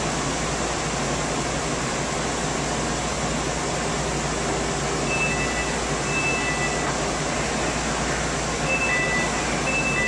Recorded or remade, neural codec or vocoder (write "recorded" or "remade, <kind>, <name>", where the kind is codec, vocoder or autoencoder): recorded